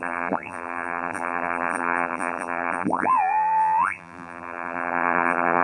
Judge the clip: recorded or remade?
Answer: remade